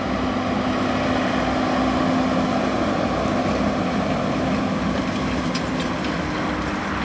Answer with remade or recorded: recorded